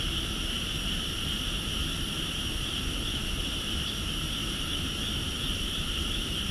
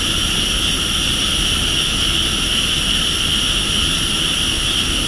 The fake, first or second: first